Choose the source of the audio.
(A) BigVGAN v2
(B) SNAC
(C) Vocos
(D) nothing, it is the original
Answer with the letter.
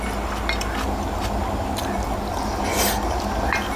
D